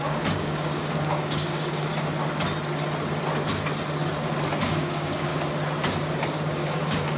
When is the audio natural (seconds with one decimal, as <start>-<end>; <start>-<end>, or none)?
1.9-4.7; 5.3-6.2